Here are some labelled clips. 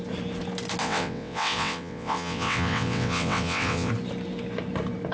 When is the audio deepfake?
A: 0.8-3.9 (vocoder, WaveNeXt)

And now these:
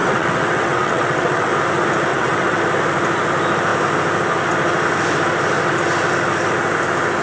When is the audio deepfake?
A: 0.0-1.5 (vocoder, WaveNeXt); 2.1-2.6

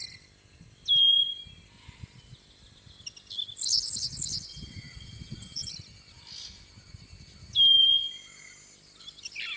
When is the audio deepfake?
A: 4.5-5.7 (vocoder, WaveNeXt)

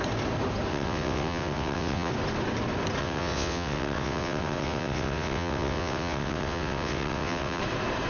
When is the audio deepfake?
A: 0.7-2.1 (vocoder, WaveNeXt); 3.0-7.6

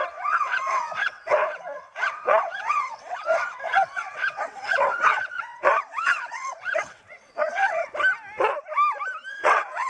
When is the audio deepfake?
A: 0.0-7.8 (vocoder, WaveNeXt); 9.3-9.9

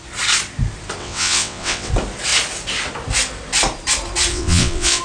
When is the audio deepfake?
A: 1.0-1.9 (vocoder, WaveNeXt); 4.3-5.0

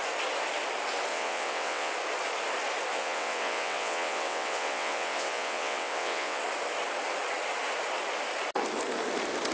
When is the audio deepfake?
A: 1.1-1.9 (vocoder, WaveNeXt); 2.9-6.4